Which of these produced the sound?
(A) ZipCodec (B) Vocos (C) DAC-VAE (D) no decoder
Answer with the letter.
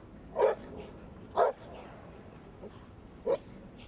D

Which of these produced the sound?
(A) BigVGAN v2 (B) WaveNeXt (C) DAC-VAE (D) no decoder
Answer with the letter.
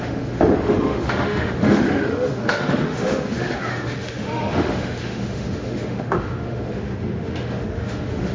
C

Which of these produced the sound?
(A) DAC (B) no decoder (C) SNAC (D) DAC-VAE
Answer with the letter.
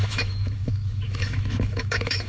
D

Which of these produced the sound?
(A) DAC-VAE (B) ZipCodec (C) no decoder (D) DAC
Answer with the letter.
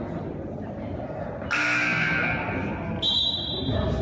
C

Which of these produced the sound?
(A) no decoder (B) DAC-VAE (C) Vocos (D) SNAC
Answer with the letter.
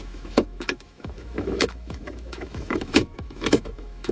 B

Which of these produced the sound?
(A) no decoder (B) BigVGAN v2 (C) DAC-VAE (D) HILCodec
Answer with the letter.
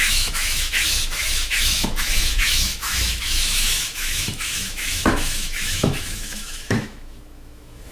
C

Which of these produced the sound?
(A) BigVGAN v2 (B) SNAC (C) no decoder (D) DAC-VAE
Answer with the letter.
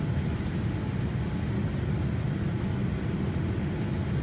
C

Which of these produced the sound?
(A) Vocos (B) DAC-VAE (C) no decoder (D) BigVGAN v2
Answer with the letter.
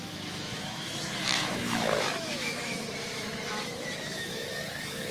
B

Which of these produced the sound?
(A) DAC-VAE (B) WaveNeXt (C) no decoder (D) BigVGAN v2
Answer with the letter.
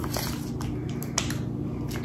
C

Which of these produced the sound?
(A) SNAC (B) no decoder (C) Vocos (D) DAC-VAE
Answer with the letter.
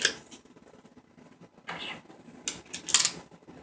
B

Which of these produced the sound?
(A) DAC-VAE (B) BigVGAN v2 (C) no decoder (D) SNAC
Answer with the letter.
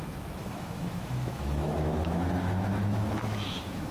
A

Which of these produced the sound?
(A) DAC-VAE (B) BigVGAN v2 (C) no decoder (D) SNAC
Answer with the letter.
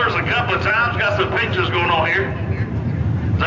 C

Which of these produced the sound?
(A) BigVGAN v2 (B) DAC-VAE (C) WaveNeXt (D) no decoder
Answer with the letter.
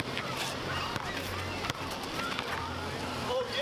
D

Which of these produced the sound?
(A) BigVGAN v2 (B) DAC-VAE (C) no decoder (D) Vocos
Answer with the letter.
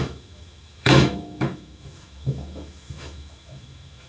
B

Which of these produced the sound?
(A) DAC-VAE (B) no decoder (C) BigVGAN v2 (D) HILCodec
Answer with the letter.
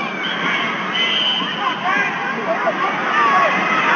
B